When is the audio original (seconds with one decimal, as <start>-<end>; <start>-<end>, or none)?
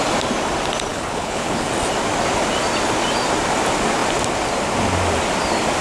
0.0-0.9; 1.7-5.8